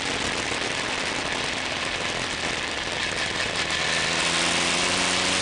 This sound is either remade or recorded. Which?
recorded